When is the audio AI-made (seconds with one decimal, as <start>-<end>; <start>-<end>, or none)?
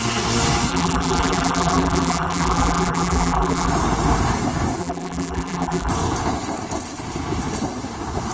0.7-3.7; 4.8-5.9